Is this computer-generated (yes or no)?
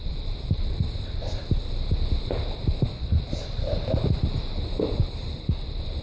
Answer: no